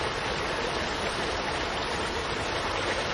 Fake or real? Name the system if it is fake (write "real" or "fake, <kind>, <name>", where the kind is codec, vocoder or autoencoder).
fake, vocoder, BigVGAN v2